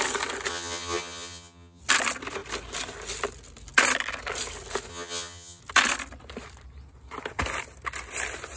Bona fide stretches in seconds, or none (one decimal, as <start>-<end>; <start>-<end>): 0.0-0.5; 1.8-4.9; 5.6-8.6